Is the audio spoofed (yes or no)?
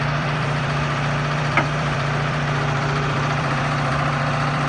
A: yes